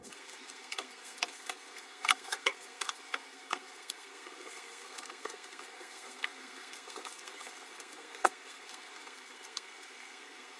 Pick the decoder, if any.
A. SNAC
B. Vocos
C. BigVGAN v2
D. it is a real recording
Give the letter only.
A